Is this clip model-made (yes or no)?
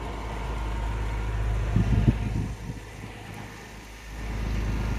no